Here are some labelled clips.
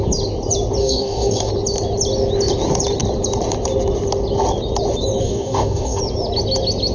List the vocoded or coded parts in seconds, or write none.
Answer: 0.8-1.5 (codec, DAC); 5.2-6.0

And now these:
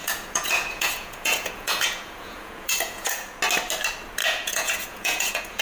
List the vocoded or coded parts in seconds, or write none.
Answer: 0.0-3.4 (vocoder, Vocos); 4.2-5.6

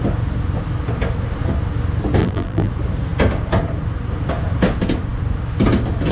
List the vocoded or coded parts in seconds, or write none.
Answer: 2.2-2.7 (vocoder, BigVGAN v2)

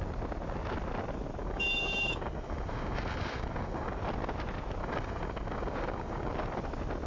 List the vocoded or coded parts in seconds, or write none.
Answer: 1.4-4.0 (codec, DAC); 4.8-6.3

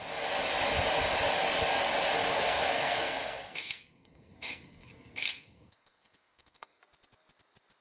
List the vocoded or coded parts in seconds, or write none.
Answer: 2.3-6.8 (codec, SNAC)

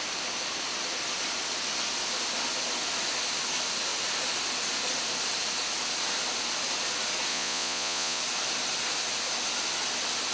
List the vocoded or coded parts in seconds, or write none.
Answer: 7.3-8.2 (vocoder, Vocos)

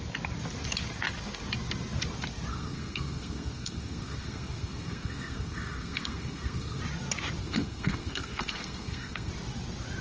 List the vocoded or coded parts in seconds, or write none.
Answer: 2.5-6.8 (codec, SNAC); 7.4-9.3

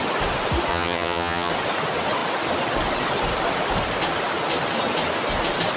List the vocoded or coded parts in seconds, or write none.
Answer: 0.7-1.5 (vocoder, HiFi-GAN)